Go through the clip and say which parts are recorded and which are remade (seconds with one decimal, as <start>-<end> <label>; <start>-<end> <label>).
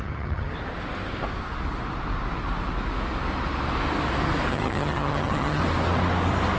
0.0-0.5 remade; 0.5-4.5 recorded; 4.5-5.6 remade; 5.6-6.6 recorded